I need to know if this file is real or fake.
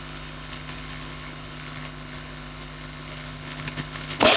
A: fake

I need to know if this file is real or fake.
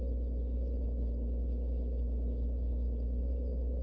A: fake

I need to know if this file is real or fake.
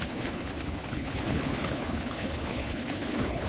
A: fake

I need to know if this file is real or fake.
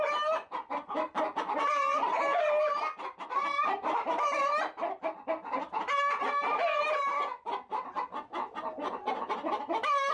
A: real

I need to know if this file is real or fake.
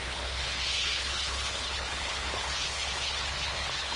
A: fake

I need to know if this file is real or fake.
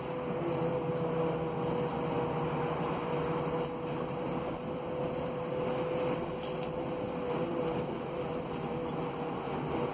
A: real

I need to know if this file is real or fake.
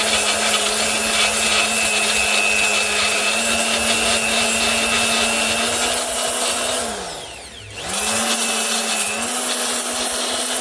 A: real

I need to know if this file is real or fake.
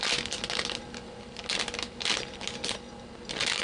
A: real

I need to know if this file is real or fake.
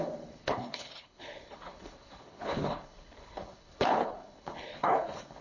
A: fake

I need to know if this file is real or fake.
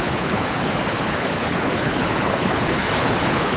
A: fake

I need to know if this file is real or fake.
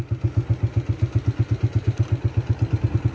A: real